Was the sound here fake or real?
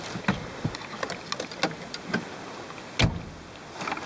real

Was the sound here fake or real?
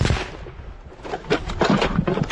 real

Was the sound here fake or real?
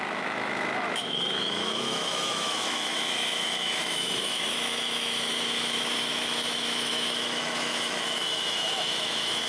fake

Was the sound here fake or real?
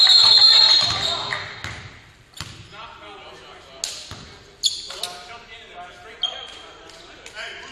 real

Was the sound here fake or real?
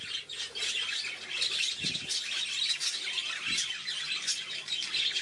real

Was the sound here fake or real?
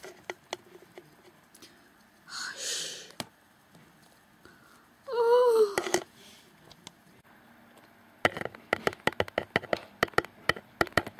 real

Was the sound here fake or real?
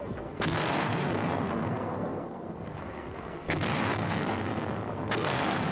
fake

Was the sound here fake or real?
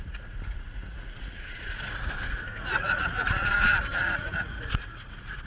fake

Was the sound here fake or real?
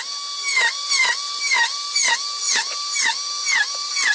real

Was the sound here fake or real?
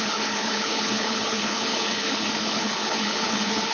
fake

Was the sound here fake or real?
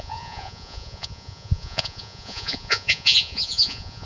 fake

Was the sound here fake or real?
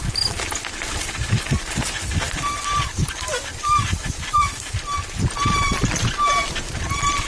real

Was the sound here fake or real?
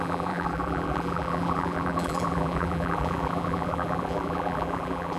fake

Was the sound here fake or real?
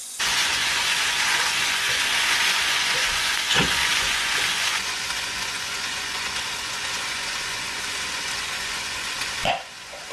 fake